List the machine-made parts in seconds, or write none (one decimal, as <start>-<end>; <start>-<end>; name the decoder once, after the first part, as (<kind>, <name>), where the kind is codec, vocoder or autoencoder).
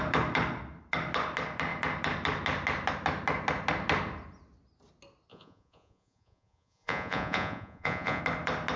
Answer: 5.3-8.2 (vocoder, Vocos)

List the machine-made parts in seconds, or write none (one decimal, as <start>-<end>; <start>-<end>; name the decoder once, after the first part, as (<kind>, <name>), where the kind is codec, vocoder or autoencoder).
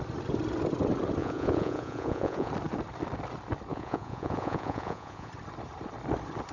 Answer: 1.2-2.5 (vocoder, Vocos); 3.7-5.3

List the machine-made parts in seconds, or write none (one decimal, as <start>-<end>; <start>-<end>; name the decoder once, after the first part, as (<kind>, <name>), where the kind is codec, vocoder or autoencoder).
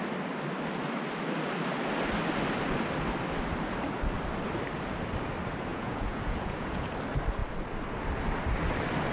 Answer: 5.7-6.9 (vocoder, Vocos)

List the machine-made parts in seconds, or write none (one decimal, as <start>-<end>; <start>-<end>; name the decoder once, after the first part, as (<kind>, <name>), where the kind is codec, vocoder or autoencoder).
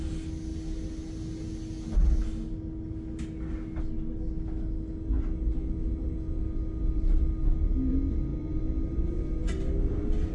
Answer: none